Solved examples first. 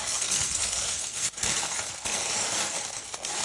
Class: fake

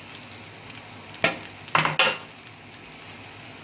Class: real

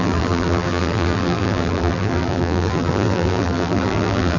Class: fake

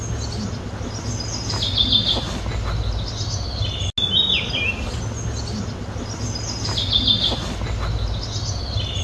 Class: real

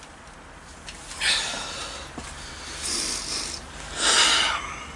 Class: real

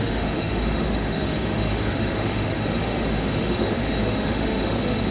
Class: fake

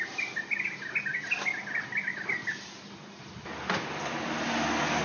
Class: real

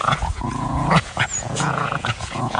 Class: fake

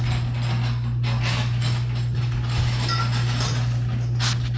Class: real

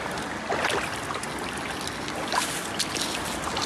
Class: real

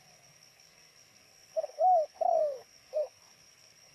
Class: fake